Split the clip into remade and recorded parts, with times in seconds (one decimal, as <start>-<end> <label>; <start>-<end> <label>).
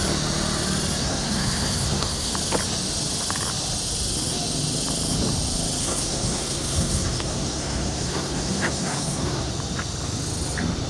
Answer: 0.0-1.0 recorded; 1.0-2.3 remade; 2.3-5.8 recorded; 5.8-9.5 remade; 9.5-10.9 recorded